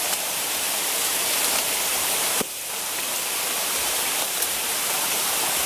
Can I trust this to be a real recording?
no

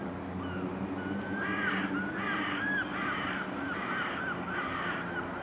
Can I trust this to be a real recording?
yes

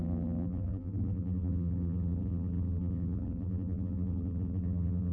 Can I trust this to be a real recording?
no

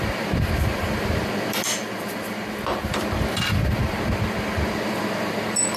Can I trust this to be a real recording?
no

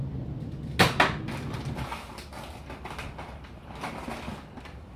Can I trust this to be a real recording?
yes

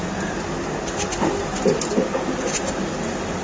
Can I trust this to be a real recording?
yes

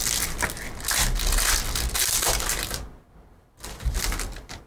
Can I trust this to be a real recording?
yes